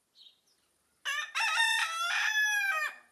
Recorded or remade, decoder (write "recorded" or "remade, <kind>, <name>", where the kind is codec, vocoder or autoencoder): recorded